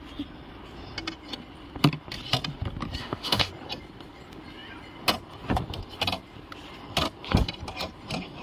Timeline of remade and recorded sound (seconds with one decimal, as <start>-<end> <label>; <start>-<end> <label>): 0.0-3.0 recorded; 3.0-3.5 remade; 3.5-8.4 recorded